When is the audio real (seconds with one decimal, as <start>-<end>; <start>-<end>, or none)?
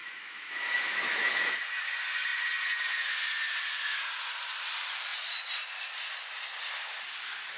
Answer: 1.6-7.6